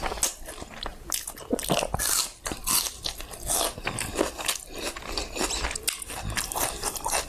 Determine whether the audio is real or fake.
real